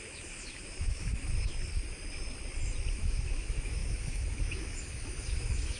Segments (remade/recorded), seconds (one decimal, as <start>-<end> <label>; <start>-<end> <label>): 0.0-1.5 remade; 1.5-2.9 recorded; 2.9-5.8 remade